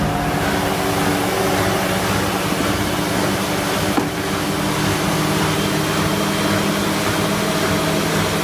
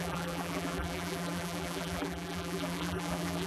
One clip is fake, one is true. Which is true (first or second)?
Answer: first